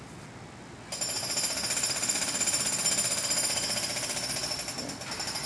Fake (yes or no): no